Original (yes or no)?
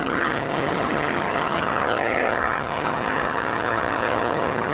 no